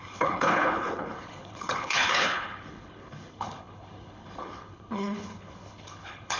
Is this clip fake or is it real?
fake